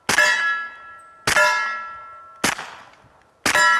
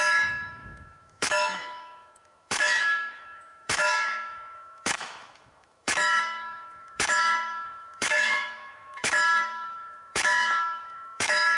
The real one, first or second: first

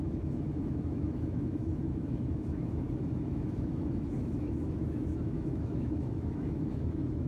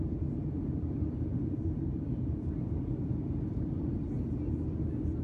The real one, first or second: second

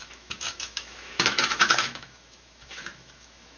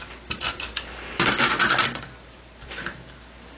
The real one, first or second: second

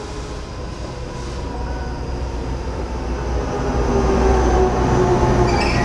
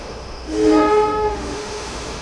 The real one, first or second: first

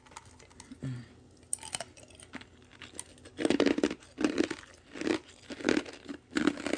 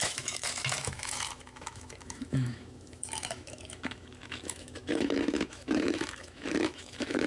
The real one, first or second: first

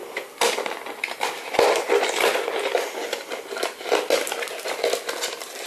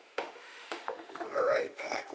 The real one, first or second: first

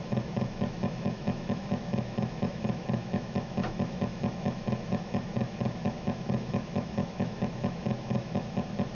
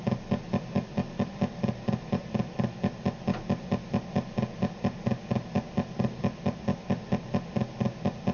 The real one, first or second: second